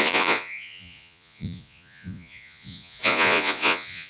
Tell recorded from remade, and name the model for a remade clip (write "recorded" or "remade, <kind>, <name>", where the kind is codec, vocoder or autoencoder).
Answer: remade, vocoder, Vocos